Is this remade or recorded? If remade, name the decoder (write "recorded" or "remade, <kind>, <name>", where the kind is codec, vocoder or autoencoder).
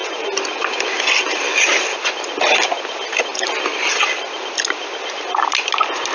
recorded